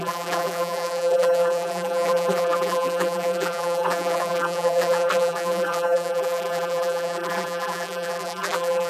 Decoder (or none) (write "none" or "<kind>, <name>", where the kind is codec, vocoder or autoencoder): vocoder, BigVGAN v2